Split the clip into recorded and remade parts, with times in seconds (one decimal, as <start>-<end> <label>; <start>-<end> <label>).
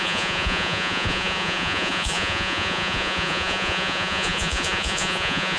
0.0-5.6 remade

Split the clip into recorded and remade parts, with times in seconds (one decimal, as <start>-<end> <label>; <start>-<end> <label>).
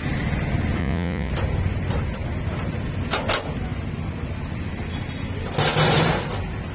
0.0-0.8 recorded; 0.8-1.3 remade; 1.3-6.7 recorded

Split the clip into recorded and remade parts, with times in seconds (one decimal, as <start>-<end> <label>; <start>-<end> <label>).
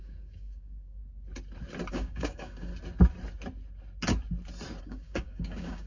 0.0-1.0 remade; 1.0-1.9 recorded; 1.9-2.7 remade; 2.7-4.8 recorded; 4.8-5.9 remade